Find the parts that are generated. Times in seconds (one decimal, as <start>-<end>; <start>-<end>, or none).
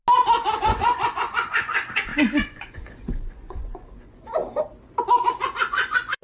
0.6-4.4; 5.1-6.2